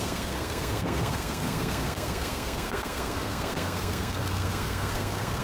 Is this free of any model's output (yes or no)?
no